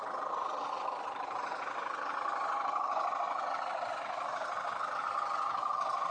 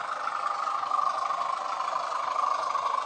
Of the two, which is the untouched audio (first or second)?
second